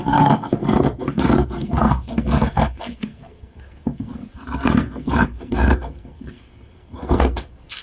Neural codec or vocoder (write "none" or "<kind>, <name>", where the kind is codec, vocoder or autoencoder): codec, SNAC